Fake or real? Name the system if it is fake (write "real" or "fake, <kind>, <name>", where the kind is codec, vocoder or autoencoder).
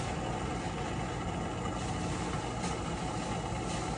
real